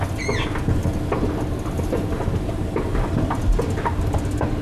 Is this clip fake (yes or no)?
no